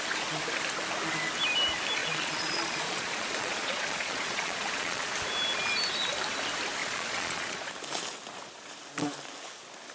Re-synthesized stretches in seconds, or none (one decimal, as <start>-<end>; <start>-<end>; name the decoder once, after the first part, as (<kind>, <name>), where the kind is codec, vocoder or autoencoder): 2.0-5.1 (vocoder, Vocos); 6.8-7.7